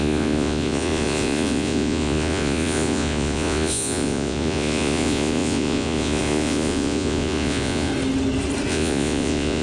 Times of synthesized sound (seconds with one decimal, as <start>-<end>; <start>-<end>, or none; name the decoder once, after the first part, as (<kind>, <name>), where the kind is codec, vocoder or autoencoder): 0.0-7.9 (vocoder, Vocos); 8.7-9.6